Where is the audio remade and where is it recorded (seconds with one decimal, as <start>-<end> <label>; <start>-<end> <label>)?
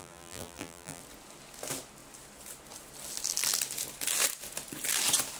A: 0.0-1.0 remade; 1.0-5.4 recorded